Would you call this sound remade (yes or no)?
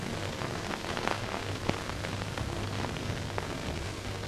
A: yes